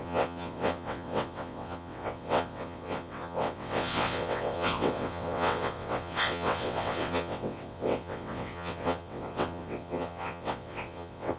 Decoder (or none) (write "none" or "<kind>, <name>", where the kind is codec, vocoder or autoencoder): vocoder, WaveNeXt